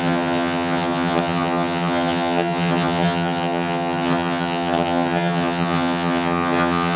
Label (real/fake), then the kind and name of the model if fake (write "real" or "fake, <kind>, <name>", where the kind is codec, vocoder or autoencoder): fake, vocoder, HiFi-GAN